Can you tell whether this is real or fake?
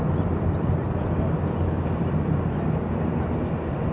real